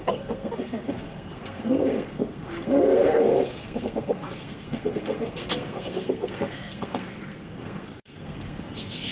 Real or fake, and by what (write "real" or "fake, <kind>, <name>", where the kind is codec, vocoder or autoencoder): fake, codec, SNAC